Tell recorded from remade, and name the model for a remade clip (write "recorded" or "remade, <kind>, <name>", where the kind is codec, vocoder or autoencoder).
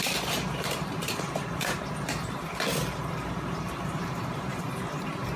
remade, vocoder, BigVGAN v2